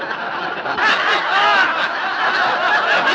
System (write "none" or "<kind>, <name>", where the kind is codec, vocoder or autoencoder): none